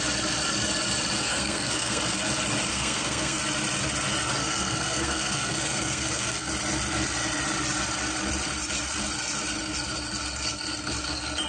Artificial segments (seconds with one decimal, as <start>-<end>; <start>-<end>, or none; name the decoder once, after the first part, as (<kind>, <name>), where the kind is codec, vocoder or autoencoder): 1.2-2.0 (codec, SNAC); 2.7-3.4; 4.4-6.5